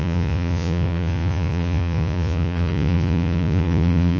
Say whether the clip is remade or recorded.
remade